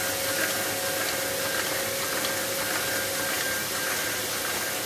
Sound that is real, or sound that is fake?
real